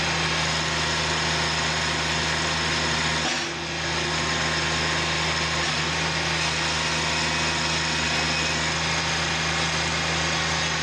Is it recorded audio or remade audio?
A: recorded